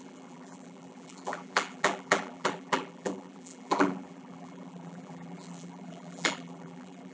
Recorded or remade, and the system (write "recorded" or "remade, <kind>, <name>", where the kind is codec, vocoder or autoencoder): remade, vocoder, BigVGAN v2